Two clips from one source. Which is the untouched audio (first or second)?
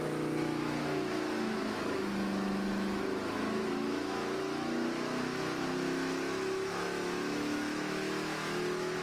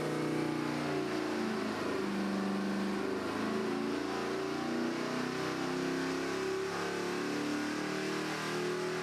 second